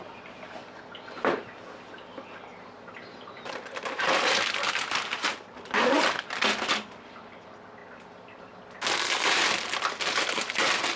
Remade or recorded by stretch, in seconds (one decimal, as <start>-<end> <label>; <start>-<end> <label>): 0.0-2.5 recorded; 2.5-6.3 remade; 6.3-11.0 recorded